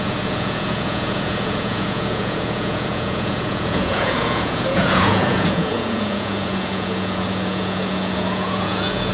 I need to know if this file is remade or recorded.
remade